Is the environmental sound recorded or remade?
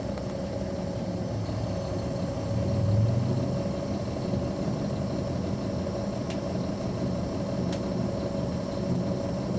recorded